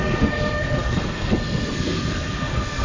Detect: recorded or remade remade